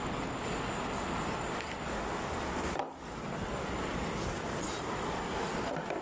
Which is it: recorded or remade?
recorded